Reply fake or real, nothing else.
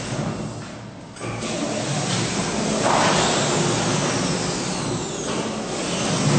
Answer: real